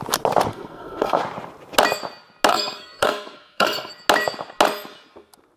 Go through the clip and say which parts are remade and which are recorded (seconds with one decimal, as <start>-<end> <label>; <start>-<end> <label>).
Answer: 0.0-0.5 recorded; 0.5-1.2 remade; 1.2-2.5 recorded; 2.5-3.9 remade; 3.9-5.6 recorded